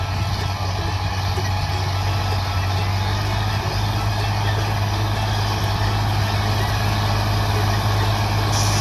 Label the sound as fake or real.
real